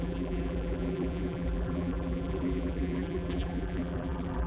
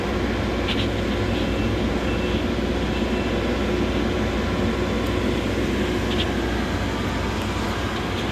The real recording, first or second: second